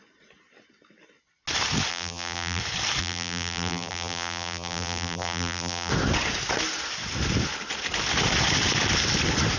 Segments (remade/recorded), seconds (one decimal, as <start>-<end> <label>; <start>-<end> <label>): 0.0-1.9 recorded; 1.9-2.6 remade; 2.6-3.0 recorded; 3.0-5.9 remade; 5.9-9.6 recorded